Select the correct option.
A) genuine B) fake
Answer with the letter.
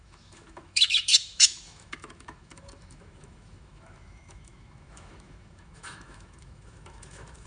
B